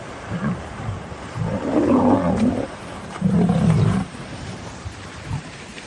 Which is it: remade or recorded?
remade